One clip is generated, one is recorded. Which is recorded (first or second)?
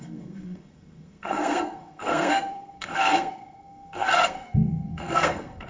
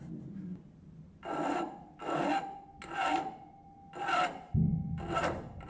second